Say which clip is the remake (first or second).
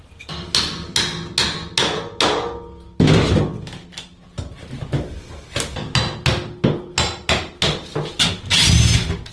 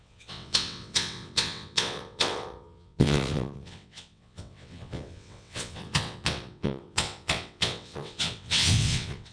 second